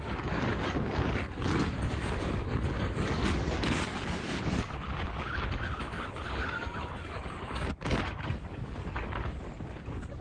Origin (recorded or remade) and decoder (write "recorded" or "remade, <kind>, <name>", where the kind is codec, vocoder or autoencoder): remade, codec, DAC